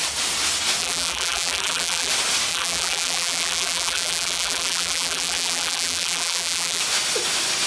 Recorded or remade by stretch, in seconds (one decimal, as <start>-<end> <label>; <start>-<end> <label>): 0.0-0.8 recorded; 0.8-2.1 remade; 2.1-2.5 recorded; 2.5-6.8 remade; 6.8-7.7 recorded